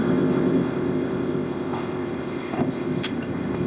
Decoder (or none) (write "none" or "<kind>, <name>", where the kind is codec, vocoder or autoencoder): codec, ZipCodec